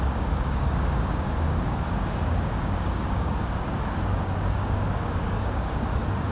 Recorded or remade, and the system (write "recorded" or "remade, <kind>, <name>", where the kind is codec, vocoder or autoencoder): remade, codec, DAC